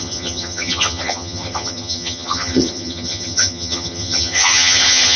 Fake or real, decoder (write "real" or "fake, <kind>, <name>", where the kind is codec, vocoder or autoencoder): fake, vocoder, HiFi-GAN